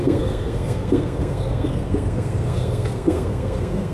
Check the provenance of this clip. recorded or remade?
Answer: remade